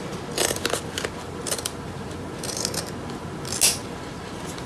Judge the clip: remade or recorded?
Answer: recorded